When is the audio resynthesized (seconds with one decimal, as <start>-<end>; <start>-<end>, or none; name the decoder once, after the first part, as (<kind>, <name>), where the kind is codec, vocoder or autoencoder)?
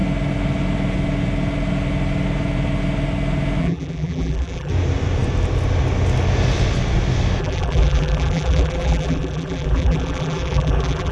3.6-4.7 (vocoder, BigVGAN v2); 7.4-11.1